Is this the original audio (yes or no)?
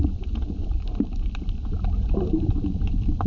yes